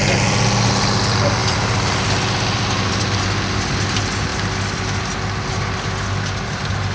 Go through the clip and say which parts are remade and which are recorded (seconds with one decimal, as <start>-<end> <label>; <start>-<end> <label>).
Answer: 0.0-1.4 recorded; 1.4-2.9 remade; 2.9-4.3 recorded; 4.3-5.0 remade; 5.0-6.9 recorded